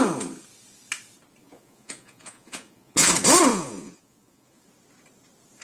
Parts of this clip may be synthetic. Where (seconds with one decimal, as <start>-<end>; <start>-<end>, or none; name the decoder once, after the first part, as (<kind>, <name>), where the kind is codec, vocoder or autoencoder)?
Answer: 1.4-3.1 (vocoder, Vocos); 3.5-4.6